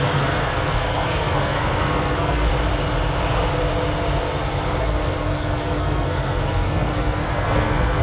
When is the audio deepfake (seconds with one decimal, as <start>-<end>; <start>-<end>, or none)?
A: 0.0-2.5; 4.8-8.0